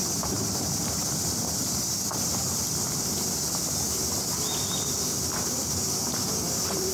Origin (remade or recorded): remade